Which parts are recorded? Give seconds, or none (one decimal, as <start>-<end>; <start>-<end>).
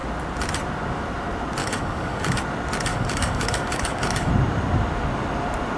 0.0-1.6; 2.4-2.9; 4.3-5.8